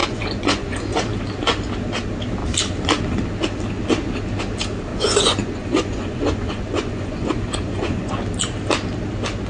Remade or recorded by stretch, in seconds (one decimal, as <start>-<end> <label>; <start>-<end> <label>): 0.0-0.8 remade; 0.8-4.9 recorded; 4.9-8.1 remade; 8.1-9.5 recorded